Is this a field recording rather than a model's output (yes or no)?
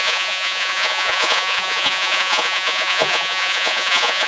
no